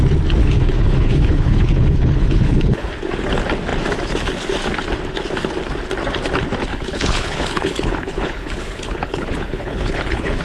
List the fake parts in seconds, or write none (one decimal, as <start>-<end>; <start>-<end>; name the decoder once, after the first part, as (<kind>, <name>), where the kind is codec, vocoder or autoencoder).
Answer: 0.4-2.9 (codec, HILCodec); 6.7-10.4

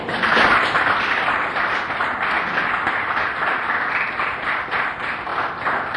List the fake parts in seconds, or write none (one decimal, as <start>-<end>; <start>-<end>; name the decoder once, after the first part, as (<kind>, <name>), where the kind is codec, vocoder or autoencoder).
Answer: none

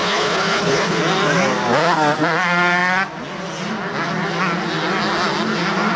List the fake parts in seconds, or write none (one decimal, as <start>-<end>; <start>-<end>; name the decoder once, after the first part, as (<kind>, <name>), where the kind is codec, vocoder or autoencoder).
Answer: 0.0-1.0 (codec, HILCodec)

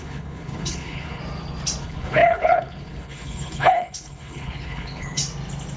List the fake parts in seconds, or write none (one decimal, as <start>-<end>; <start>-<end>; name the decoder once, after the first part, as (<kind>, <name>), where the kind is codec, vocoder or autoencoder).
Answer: 0.0-1.2 (codec, HILCodec); 1.8-5.2